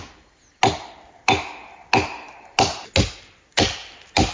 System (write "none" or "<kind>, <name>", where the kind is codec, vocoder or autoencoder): none